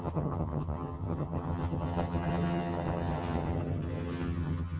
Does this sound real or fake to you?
fake